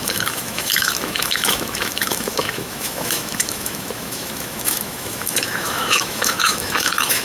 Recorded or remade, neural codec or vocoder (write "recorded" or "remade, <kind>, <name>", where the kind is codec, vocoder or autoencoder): remade, autoencoder, DAC-VAE